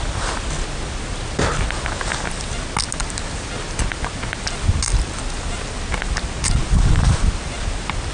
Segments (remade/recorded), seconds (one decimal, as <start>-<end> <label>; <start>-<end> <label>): 0.0-8.1 recorded